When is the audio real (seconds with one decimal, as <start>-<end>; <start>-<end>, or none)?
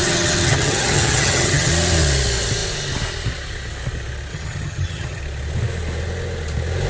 1.7-4.3; 5.2-6.9